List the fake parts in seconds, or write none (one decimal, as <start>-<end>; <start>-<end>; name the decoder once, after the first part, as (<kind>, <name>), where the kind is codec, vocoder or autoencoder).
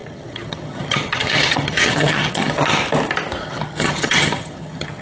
0.0-2.8 (vocoder, HiFi-GAN); 3.4-5.0